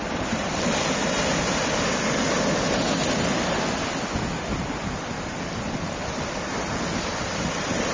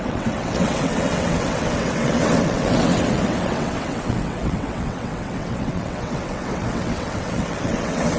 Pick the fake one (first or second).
second